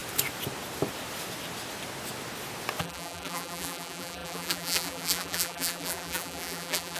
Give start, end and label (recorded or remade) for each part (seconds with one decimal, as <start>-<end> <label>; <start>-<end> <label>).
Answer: 0.0-2.8 recorded; 2.8-7.0 remade